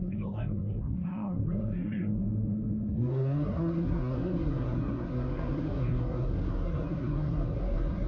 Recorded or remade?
remade